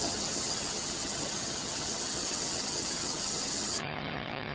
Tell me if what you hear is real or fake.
fake